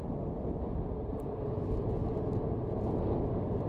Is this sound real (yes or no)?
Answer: yes